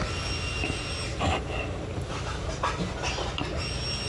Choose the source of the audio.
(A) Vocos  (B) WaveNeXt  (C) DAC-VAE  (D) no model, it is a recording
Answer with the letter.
D